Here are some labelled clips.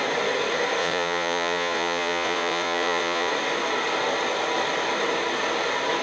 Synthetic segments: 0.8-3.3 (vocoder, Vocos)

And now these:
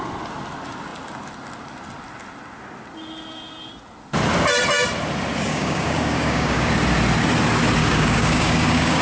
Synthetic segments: 5.5-6.7 (codec, DAC); 7.8-9.0

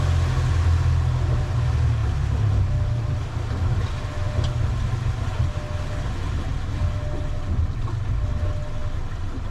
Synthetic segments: none

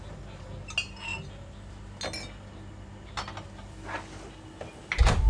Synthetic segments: none

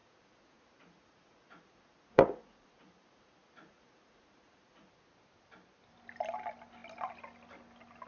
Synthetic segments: 0.0-4.9 (vocoder, Vocos)

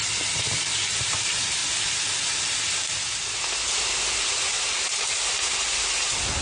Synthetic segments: none

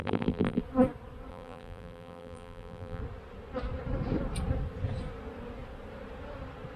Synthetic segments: 0.0-0.6 (vocoder, BigVGAN v2); 1.3-3.0

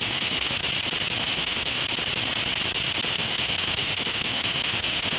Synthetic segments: 0.0-0.6 (autoencoder, DAC-VAE); 1.2-1.8; 3.1-5.2